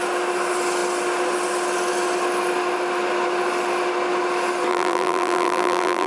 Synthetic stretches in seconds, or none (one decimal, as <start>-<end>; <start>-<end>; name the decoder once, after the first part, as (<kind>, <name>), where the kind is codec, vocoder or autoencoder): 4.7-6.1 (vocoder, BigVGAN v2)